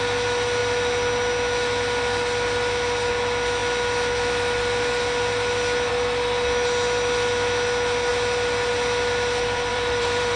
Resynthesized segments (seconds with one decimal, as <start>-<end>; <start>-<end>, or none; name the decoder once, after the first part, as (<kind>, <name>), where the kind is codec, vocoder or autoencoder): 9.7-10.4 (vocoder, BigVGAN v2)